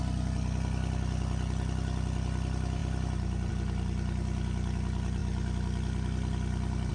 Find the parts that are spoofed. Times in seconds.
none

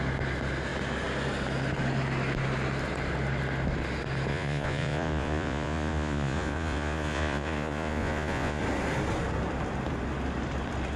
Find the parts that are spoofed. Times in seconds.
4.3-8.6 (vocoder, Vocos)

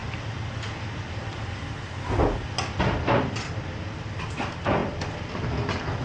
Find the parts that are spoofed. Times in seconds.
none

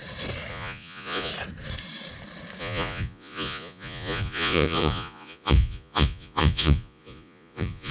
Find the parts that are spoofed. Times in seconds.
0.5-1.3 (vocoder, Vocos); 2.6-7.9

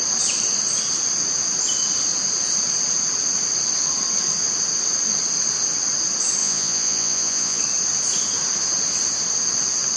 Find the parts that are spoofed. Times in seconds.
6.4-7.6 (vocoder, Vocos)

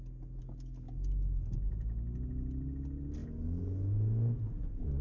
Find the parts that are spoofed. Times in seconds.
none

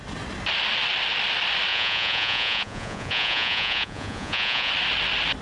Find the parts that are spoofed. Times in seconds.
1.7-4.7 (vocoder, Vocos)